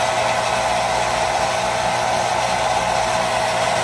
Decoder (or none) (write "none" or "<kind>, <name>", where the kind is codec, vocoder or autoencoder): none